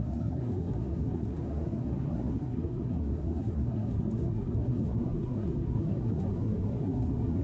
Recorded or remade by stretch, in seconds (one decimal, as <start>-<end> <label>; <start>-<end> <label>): 0.0-7.4 remade